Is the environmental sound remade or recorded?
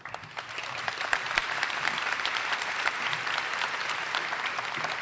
remade